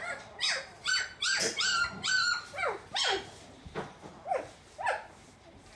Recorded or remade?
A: recorded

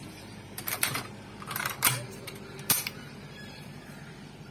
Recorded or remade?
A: remade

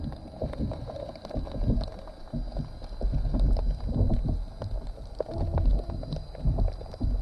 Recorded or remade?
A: recorded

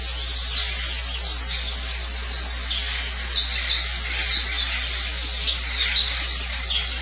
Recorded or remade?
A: recorded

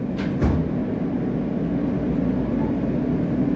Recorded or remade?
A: recorded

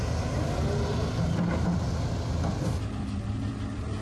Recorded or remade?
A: recorded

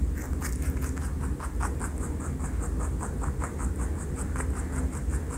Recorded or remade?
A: recorded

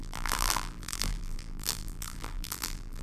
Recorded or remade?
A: remade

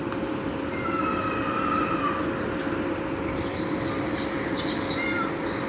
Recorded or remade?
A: recorded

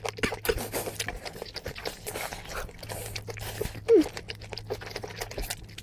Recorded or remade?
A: recorded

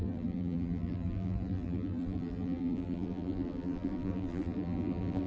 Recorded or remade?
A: remade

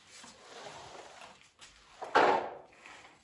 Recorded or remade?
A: recorded